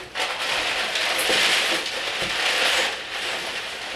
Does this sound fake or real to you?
real